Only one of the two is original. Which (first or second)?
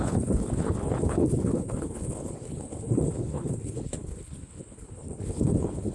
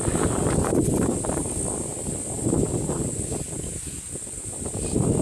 second